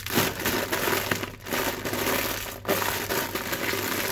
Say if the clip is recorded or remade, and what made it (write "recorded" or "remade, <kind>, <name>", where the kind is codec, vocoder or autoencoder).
recorded